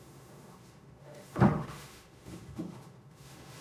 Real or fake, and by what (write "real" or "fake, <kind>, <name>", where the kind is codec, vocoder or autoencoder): fake, autoencoder, DAC-VAE